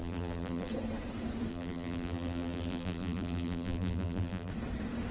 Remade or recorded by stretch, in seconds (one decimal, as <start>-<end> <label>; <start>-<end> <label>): 0.0-0.7 remade; 0.7-1.5 recorded; 1.5-4.5 remade; 4.5-5.1 recorded